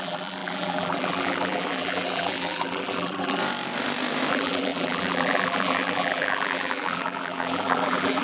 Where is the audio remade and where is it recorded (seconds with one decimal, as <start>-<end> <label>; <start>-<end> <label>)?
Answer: 0.0-3.4 remade; 3.4-4.3 recorded; 4.3-8.2 remade